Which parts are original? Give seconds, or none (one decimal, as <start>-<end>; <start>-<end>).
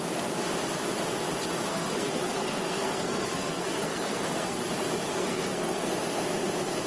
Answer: 0.0-1.7; 4.6-5.1; 5.9-6.9